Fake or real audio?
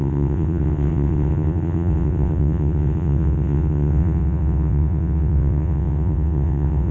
fake